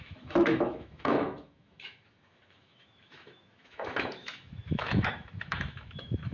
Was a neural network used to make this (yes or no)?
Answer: yes